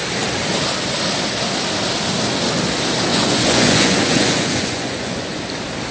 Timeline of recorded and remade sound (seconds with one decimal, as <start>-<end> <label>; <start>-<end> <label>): 0.0-3.1 recorded; 3.1-5.4 remade; 5.4-5.9 recorded